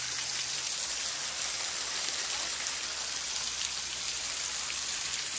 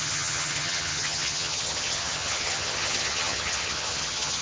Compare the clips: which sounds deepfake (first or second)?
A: second